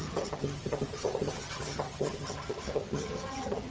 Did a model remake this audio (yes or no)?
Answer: yes